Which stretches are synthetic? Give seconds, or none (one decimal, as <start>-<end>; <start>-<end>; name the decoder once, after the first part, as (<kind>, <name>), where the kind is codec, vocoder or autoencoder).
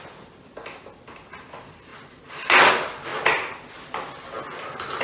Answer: none